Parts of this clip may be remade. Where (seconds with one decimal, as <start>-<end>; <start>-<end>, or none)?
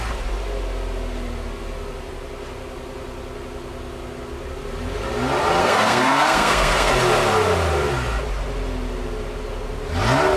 5.6-6.9